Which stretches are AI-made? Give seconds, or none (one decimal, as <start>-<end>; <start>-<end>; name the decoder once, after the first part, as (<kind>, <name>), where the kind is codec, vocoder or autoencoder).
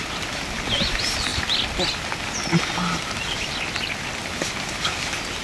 none